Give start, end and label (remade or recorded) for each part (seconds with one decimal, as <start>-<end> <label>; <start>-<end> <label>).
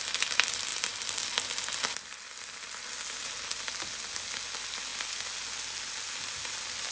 0.0-6.9 recorded